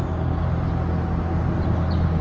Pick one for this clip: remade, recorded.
recorded